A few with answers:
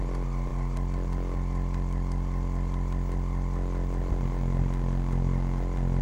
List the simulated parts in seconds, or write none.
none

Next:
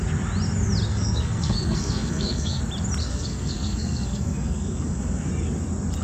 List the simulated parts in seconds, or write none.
0.9-2.6 (codec, SNAC); 3.0-5.3

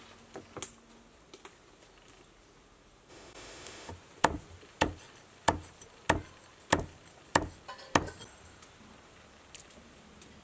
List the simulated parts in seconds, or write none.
3.1-3.9 (autoencoder, DAC-VAE)

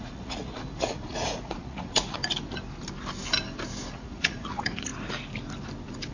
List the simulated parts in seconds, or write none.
0.0-2.2 (vocoder, Vocos); 3.9-4.9

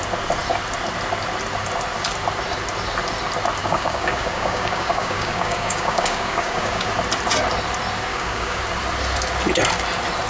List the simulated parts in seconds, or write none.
3.6-6.9 (codec, DAC); 8.1-8.6

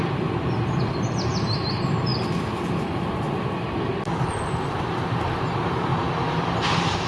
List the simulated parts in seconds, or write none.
none

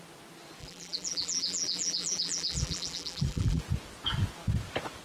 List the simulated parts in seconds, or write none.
0.6-3.6 (vocoder, BigVGAN v2)